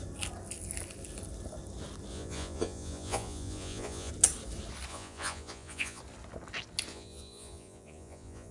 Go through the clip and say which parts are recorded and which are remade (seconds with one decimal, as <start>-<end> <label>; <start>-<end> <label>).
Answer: 0.0-2.1 recorded; 2.1-4.1 remade; 4.1-4.9 recorded; 4.9-6.0 remade; 6.0-6.9 recorded; 6.9-8.5 remade